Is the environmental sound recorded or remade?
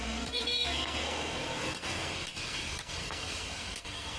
remade